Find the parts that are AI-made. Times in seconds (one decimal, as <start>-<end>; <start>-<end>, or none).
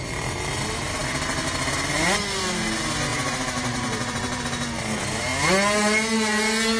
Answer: 3.1-4.4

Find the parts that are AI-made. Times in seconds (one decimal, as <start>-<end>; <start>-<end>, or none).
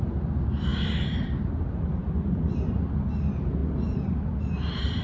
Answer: 0.7-1.6; 2.0-2.7; 3.6-4.1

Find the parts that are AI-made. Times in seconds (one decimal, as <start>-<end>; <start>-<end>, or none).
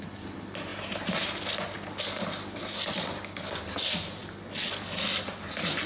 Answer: none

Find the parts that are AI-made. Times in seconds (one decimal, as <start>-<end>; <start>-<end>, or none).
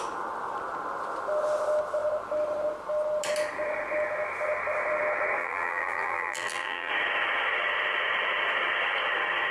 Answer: 5.4-6.9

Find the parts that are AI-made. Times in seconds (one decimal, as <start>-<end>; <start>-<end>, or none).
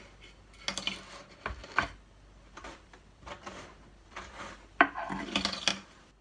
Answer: 1.6-5.3; 5.7-6.2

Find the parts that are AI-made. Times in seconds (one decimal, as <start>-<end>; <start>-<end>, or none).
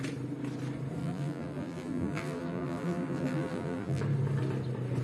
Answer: 1.0-4.0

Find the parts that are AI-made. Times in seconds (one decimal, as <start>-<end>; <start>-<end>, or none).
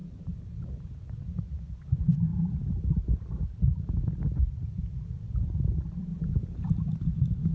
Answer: 0.0-0.5; 2.3-3.8; 6.1-6.7